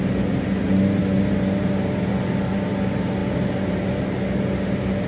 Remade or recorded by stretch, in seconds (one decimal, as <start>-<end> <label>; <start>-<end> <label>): 0.0-5.1 recorded